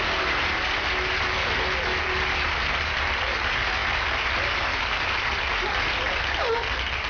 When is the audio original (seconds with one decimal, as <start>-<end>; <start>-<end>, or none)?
0.0-7.1